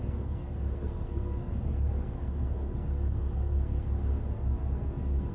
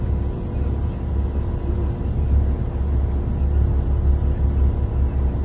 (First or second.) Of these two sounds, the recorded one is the second